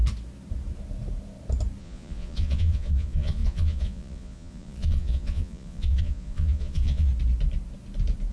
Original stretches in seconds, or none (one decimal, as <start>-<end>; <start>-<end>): 0.0-1.8; 7.1-8.3